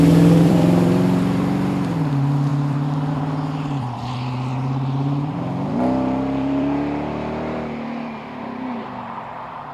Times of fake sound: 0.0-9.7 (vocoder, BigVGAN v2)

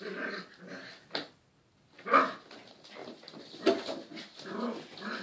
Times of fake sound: 3.0-3.6 (vocoder, BigVGAN v2); 4.1-5.2

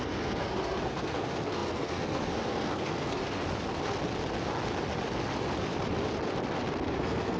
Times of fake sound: 0.0-3.4 (codec, SNAC); 7.0-7.4

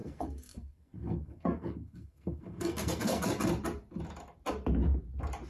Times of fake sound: 0.0-3.3 (codec, SNAC)

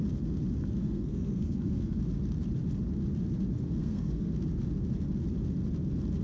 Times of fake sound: 0.8-2.0 (codec, SNAC); 3.8-4.3